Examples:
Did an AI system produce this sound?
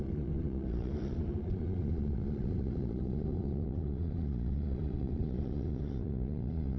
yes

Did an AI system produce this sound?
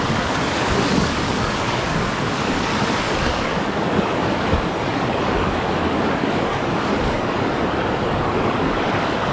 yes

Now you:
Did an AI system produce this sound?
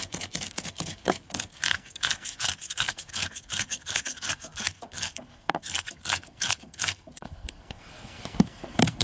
yes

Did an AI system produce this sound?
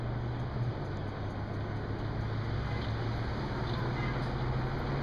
no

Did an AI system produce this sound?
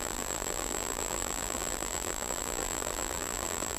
yes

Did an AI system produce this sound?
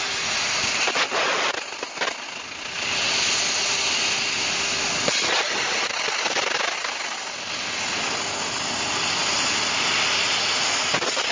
no